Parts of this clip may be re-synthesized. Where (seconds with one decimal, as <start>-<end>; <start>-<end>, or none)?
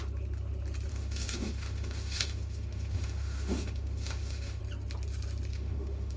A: 0.9-4.6; 5.5-6.2